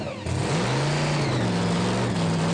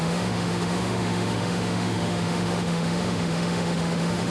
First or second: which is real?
first